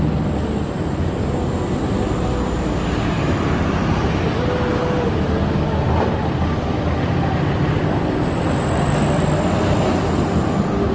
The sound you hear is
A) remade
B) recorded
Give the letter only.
B